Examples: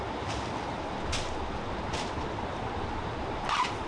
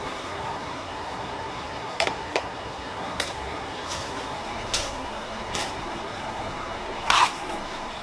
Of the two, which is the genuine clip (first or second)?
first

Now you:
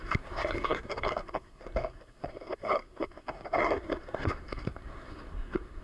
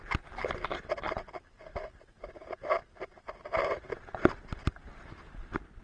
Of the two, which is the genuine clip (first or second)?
second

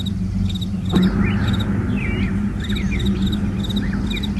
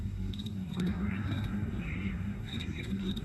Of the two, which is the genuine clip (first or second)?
first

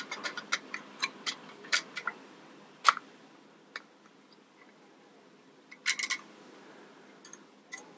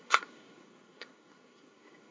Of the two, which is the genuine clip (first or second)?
first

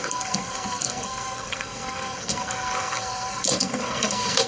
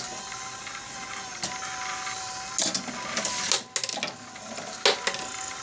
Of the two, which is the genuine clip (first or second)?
second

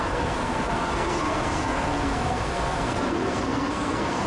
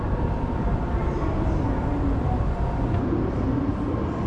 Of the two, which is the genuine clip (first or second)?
second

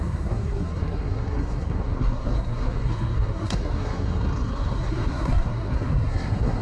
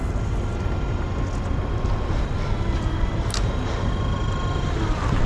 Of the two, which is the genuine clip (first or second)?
second